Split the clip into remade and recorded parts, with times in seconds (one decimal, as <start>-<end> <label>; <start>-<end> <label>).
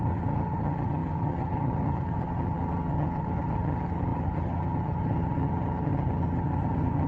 0.0-7.1 remade